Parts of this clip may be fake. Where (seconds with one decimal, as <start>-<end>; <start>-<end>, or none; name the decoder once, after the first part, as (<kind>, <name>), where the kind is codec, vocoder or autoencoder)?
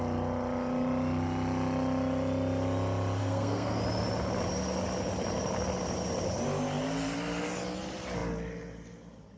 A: 3.2-3.8 (codec, SNAC)